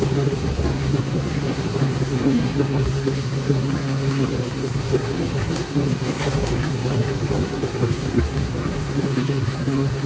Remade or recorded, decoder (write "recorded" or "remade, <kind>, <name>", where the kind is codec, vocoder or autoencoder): remade, codec, SNAC